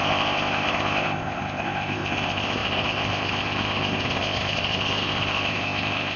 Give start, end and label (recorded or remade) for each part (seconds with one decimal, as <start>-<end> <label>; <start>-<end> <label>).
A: 0.0-6.2 remade